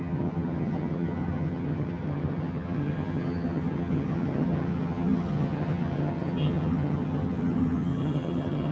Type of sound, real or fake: fake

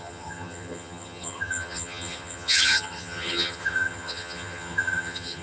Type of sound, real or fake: fake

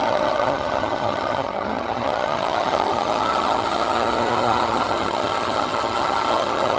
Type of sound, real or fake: fake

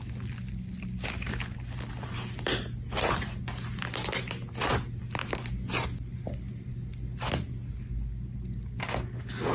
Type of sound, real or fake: real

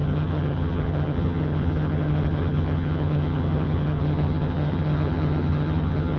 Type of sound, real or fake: fake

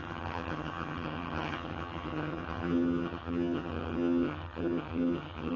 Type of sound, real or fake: fake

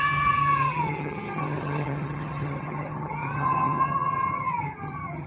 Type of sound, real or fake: fake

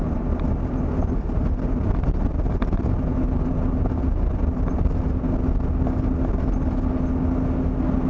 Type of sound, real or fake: real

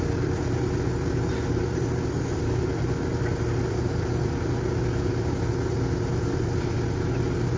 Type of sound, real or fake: real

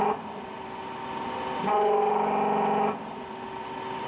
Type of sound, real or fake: real